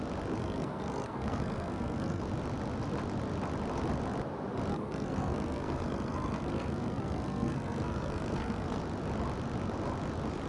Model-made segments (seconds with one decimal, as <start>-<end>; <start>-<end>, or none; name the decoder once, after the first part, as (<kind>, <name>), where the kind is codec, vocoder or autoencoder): 0.4-2.2 (codec, SNAC); 4.7-8.8